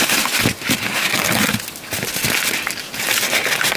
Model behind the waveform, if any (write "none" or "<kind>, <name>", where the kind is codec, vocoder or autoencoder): none